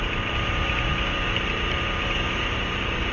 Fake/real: real